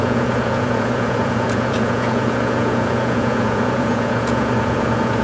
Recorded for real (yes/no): no